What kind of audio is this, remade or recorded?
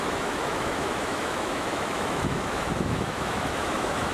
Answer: remade